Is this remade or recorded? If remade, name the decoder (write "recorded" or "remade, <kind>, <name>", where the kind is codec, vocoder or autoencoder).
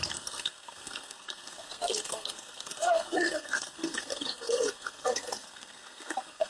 remade, codec, SNAC